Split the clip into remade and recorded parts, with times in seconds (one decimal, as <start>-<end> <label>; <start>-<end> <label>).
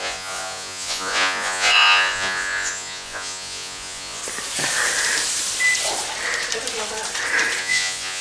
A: 0.0-4.2 remade; 4.2-7.6 recorded; 7.6-8.2 remade